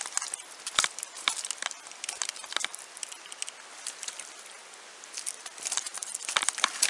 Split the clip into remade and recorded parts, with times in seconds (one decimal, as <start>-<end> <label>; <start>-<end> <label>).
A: 0.0-6.9 recorded